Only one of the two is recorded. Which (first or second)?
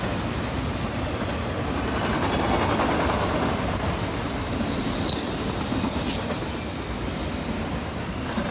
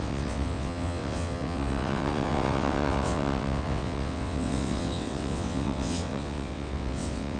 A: first